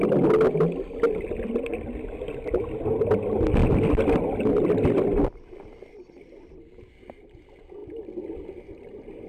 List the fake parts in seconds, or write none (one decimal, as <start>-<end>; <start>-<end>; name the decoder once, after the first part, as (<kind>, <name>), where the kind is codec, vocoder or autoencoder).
none